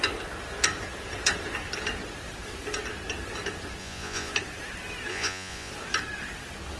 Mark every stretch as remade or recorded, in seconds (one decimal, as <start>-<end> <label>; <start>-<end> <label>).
0.0-3.8 recorded; 3.8-4.3 remade; 4.3-5.1 recorded; 5.1-5.7 remade; 5.7-6.8 recorded